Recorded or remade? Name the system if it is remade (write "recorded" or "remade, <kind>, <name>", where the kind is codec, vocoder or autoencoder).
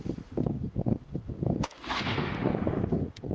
remade, autoencoder, DAC-VAE